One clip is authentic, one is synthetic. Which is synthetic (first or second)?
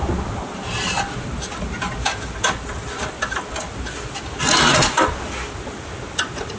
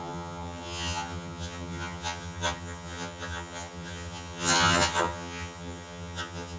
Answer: second